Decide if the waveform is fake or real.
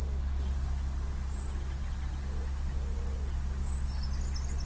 real